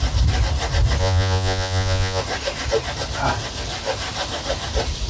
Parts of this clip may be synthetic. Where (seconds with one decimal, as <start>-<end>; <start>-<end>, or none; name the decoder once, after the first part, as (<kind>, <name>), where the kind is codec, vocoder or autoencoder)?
1.0-2.2 (vocoder, Vocos)

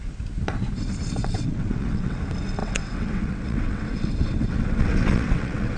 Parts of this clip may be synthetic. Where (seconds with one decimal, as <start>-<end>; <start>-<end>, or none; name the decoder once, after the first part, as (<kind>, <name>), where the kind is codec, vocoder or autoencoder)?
1.2-2.2 (vocoder, WaveNeXt); 2.6-5.8

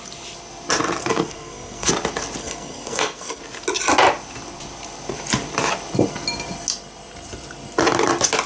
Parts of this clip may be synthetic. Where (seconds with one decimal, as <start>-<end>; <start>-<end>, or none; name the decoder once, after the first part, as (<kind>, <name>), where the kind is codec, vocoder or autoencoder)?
1.0-1.9 (codec, SNAC); 2.4-3.4

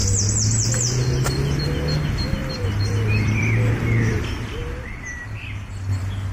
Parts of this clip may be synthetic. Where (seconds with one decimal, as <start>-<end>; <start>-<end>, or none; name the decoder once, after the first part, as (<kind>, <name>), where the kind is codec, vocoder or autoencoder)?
2.4-3.7 (vocoder, BigVGAN v2); 4.6-5.4